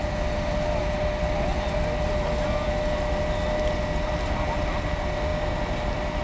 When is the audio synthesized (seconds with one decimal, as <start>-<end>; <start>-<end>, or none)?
none